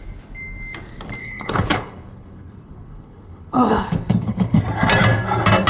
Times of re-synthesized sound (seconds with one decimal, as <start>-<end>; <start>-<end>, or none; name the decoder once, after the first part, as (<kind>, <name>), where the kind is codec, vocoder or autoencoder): 1.2-4.6 (codec, HILCodec)